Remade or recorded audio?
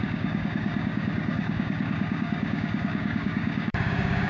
remade